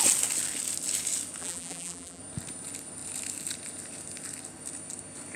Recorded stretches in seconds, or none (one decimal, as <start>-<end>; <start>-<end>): 0.0-1.4; 2.2-5.4